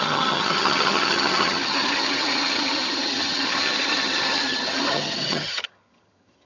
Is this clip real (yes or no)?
no